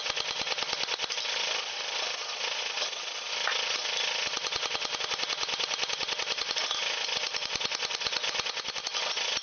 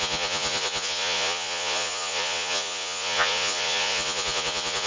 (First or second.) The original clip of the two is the first